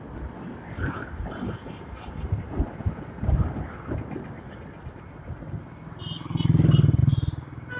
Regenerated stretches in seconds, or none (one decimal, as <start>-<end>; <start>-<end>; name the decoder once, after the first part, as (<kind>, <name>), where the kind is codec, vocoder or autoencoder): none